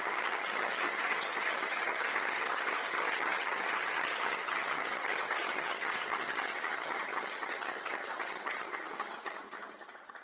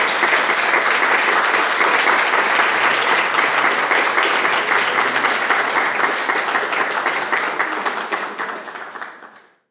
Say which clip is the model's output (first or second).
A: first